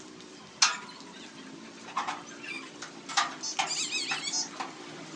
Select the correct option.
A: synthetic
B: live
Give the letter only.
B